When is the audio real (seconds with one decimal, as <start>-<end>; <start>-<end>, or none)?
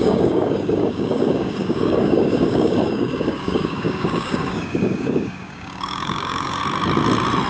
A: 6.6-7.5